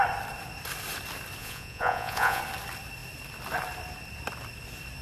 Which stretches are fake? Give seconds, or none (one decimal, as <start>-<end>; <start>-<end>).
1.4-2.4